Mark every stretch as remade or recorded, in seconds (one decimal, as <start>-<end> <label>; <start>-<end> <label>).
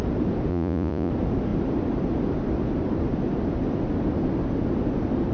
0.0-0.5 recorded; 0.5-1.1 remade; 1.1-5.3 recorded